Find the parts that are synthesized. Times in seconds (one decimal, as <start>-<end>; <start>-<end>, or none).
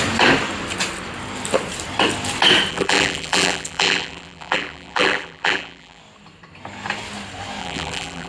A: 2.7-6.0; 7.6-8.3